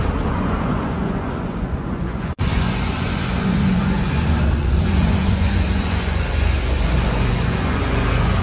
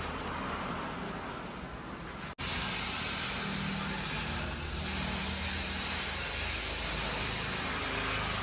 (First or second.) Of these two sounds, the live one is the second